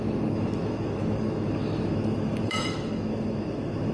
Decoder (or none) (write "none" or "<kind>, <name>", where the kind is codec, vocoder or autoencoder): autoencoder, DAC-VAE